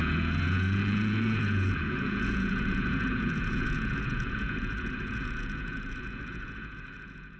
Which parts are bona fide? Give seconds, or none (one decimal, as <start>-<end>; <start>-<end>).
none